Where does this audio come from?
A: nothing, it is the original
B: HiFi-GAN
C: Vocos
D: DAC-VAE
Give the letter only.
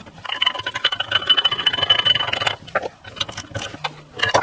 A